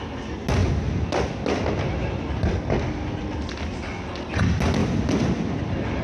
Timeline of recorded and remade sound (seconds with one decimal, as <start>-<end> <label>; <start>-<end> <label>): 0.0-6.0 recorded